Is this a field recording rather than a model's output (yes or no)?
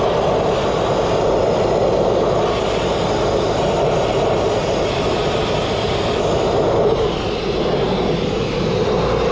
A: yes